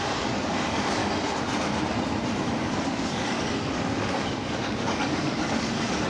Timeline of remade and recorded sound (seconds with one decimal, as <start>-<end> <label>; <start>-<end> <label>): 0.0-1.0 remade; 1.0-2.6 recorded; 2.6-6.1 remade